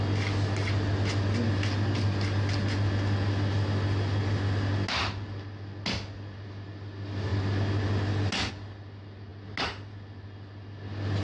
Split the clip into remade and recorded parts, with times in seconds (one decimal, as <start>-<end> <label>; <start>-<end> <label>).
0.0-11.2 recorded